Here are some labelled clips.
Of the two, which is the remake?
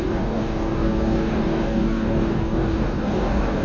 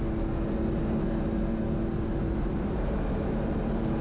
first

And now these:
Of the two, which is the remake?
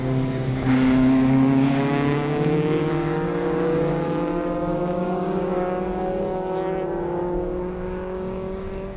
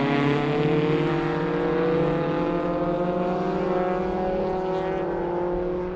first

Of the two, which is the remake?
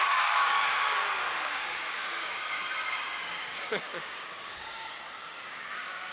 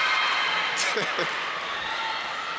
first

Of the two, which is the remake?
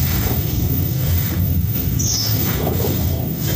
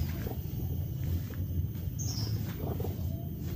first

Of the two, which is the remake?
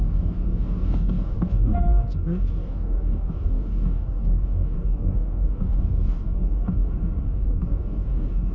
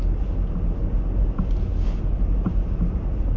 first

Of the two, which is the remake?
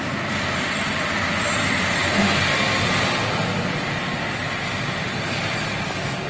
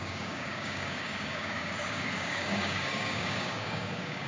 second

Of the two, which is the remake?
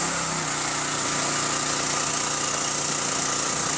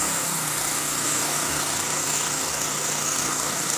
second